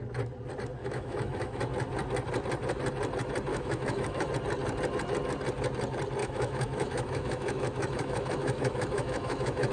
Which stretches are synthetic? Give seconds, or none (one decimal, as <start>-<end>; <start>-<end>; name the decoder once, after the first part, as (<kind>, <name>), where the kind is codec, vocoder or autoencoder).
0.8-1.6 (autoencoder, DAC-VAE); 3.5-4.3; 6.2-9.7